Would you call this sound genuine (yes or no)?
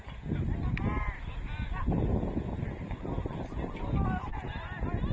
yes